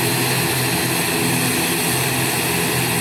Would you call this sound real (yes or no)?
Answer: yes